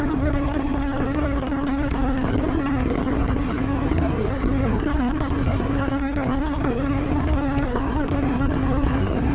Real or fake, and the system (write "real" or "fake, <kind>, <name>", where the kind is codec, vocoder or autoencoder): fake, codec, SNAC